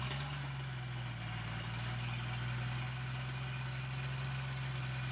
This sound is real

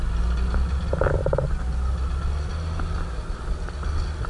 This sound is real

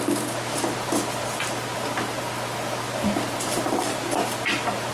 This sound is real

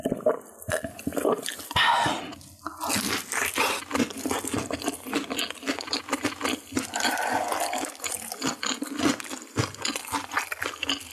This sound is real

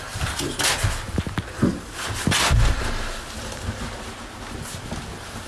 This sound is real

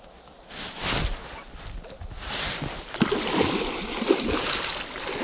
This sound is real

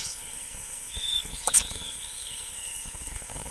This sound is fake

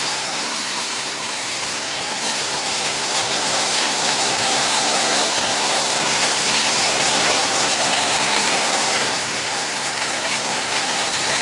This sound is fake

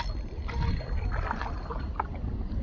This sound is real